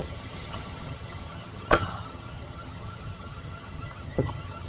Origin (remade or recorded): remade